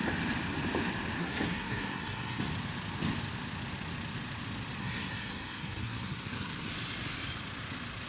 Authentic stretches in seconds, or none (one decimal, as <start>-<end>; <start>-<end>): 0.0-1.2; 2.5-4.8; 6.7-8.1

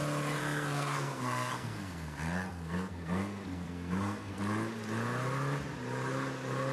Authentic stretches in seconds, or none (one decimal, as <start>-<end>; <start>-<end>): 0.0-0.4; 4.4-6.7

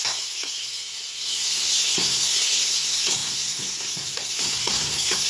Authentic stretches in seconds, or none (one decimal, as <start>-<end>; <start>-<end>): none

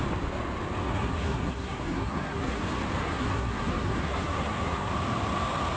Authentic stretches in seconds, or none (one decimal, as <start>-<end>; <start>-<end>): 0.0-0.8; 2.6-3.0; 4.9-5.8